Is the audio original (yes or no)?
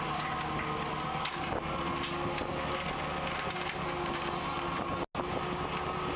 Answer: yes